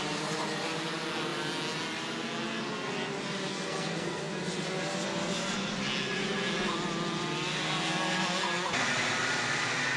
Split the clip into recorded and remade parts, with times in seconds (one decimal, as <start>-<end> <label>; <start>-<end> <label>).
0.0-3.5 recorded; 3.5-4.3 remade; 4.3-10.0 recorded